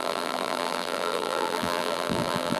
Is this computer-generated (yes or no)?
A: yes